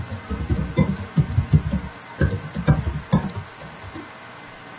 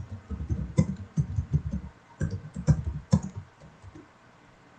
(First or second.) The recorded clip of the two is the first